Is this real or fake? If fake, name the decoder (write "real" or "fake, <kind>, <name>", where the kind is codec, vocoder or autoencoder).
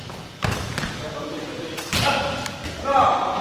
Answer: real